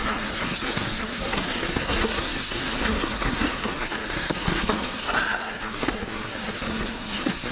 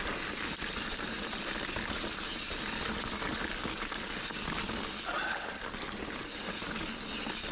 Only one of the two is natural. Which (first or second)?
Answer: second